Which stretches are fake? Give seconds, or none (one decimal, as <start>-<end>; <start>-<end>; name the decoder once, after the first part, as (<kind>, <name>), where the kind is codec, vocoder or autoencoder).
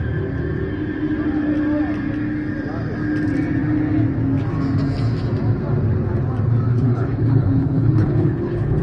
6.7-8.8 (codec, HILCodec)